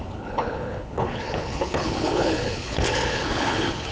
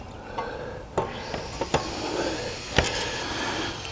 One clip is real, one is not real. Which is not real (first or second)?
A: first